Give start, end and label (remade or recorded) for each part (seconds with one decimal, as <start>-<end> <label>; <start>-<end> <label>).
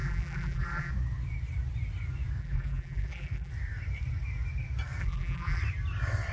0.0-0.9 remade; 0.9-2.4 recorded; 2.4-3.5 remade; 3.5-5.0 recorded; 5.0-5.6 remade; 5.6-6.3 recorded